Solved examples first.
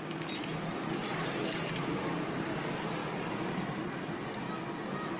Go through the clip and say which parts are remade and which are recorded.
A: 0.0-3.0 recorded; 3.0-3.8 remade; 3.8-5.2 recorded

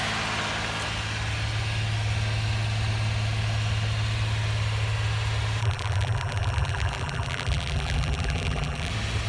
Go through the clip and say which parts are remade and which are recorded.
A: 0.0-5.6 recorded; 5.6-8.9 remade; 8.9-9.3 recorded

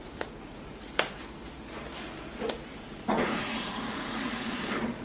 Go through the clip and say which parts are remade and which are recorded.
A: 0.0-0.7 remade; 0.7-2.8 recorded; 2.8-5.0 remade

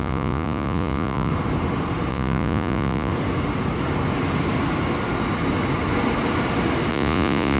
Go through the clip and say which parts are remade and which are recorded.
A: 0.0-1.3 remade; 1.3-2.1 recorded; 2.1-3.1 remade; 3.1-6.9 recorded; 6.9-7.6 remade

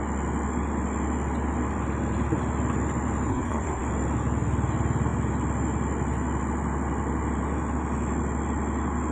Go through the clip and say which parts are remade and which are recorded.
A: 0.0-3.3 recorded; 3.3-3.8 remade; 3.8-9.1 recorded

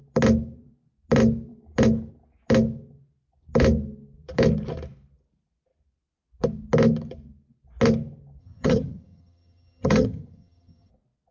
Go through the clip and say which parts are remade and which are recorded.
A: 0.0-8.4 recorded; 8.4-10.9 remade; 10.9-11.3 recorded

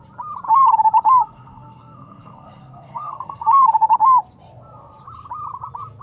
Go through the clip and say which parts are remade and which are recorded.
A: 0.0-1.2 recorded; 1.2-3.6 remade; 3.6-6.0 recorded

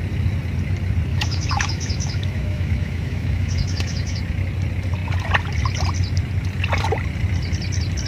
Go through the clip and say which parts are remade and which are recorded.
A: 0.0-1.1 recorded; 1.1-4.2 remade; 4.2-8.1 recorded